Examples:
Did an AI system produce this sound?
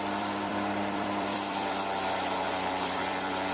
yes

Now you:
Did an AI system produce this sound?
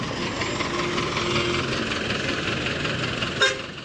no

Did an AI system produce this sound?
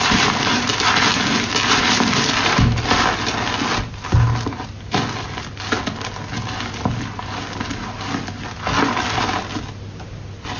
no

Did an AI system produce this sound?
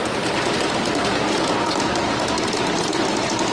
no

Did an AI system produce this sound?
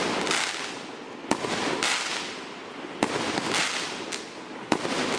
no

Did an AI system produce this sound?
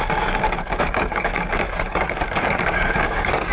yes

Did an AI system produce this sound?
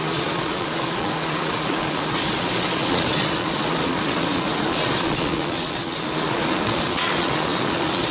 yes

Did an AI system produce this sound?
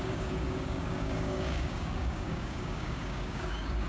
yes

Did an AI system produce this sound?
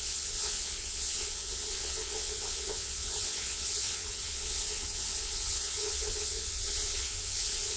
yes